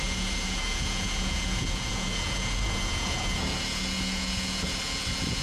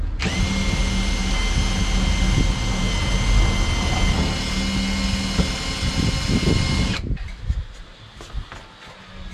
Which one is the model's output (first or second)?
first